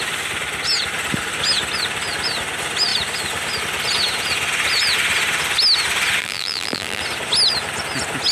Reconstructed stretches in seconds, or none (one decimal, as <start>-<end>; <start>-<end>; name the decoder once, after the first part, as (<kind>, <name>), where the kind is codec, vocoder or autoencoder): 6.2-7.0 (vocoder, BigVGAN v2)